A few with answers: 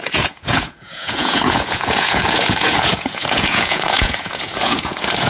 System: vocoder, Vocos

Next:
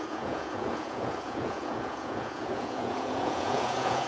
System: vocoder, Vocos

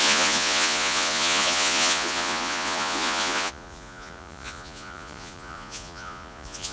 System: vocoder, Vocos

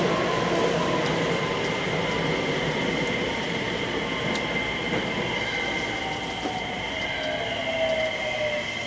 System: none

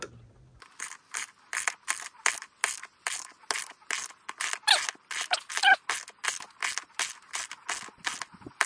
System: none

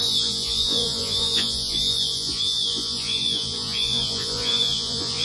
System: vocoder, Vocos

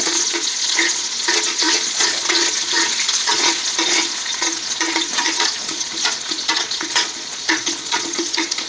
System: vocoder, Vocos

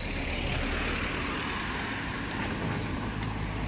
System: none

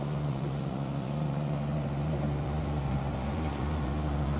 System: vocoder, Vocos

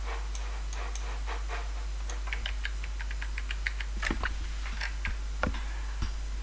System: none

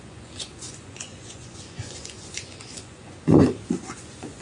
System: vocoder, Vocos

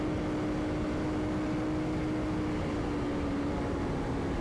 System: none